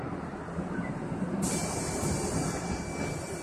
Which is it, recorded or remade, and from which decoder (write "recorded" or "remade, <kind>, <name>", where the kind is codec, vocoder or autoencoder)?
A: recorded